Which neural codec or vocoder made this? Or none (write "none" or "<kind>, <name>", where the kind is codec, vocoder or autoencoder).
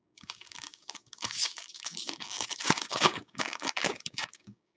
codec, DAC